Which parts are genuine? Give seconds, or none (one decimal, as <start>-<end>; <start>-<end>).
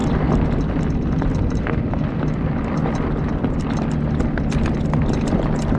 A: 0.0-5.8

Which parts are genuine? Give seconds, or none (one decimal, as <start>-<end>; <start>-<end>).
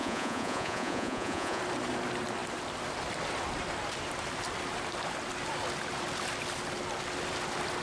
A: 1.6-7.8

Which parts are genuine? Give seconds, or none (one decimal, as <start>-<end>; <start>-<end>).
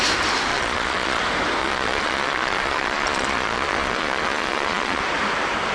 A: 0.0-0.5; 1.2-1.6; 5.0-5.7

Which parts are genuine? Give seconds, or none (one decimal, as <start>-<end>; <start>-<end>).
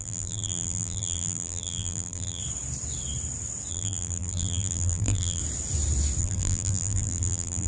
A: 2.4-3.7; 5.4-6.2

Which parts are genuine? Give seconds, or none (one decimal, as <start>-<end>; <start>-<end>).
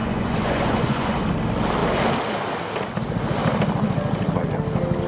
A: 1.2-5.1